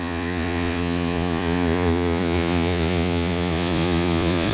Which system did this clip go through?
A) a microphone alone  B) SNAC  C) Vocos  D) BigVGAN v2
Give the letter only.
C